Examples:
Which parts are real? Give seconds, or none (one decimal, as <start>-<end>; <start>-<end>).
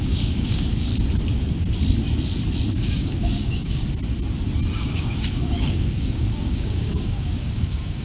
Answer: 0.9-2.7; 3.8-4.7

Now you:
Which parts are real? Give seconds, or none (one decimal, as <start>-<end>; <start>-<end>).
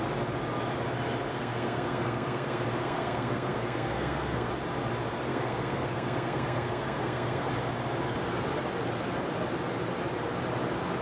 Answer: 0.0-1.3; 4.5-5.3; 7.5-11.0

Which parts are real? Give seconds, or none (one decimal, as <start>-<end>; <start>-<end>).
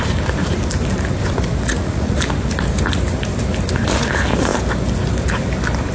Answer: 0.0-1.7; 2.2-5.9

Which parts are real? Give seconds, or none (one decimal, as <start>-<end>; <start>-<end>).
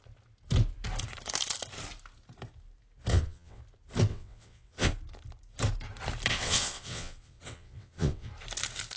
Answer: 0.0-3.1; 3.6-4.1; 4.9-6.3; 8.3-9.0